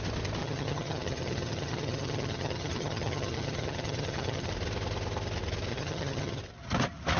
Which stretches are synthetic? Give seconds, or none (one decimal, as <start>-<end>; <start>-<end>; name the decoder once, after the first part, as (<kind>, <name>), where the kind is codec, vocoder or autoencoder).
0.4-4.5 (vocoder, HiFi-GAN); 5.7-6.4